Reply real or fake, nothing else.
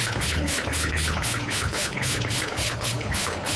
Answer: fake